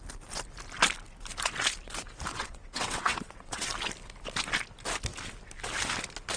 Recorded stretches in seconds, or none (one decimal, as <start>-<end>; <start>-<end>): 0.0-2.3; 3.7-6.4